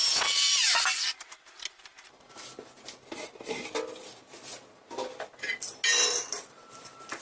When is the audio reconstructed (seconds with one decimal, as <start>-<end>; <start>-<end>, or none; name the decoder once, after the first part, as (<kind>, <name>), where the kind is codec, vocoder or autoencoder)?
none

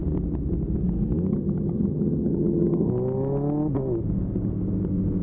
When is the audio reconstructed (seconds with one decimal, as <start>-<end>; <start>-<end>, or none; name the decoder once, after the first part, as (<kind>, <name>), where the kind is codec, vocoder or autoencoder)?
1.3-2.9 (vocoder, HiFi-GAN)